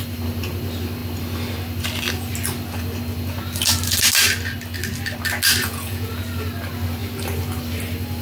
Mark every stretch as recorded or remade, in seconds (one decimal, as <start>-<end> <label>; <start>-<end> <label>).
0.0-5.6 recorded; 5.6-6.1 remade; 6.1-8.2 recorded